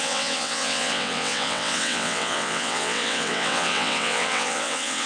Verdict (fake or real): fake